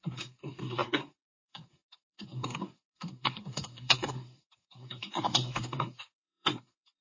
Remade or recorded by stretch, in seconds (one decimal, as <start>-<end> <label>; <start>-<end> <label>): 0.0-7.0 remade